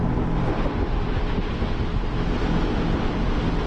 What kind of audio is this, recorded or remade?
recorded